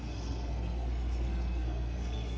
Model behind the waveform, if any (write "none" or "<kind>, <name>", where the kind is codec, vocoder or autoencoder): codec, SNAC